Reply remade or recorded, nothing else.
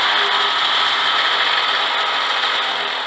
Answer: recorded